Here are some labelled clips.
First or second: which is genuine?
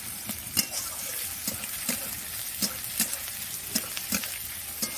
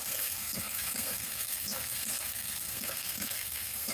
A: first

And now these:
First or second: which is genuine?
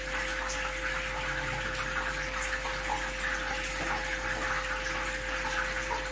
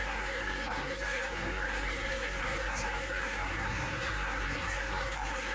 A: first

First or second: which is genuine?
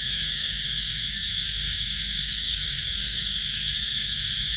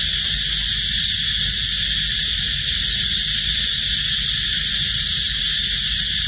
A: second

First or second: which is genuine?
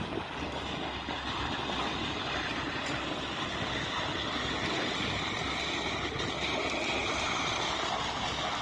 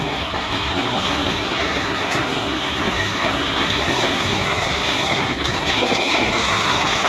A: first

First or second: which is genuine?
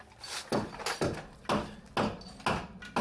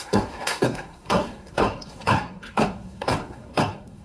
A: first